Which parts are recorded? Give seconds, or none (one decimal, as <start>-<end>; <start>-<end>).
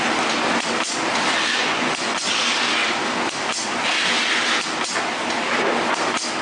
0.0-1.6; 2.3-6.4